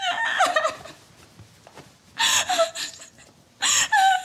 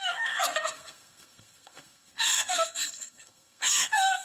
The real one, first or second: first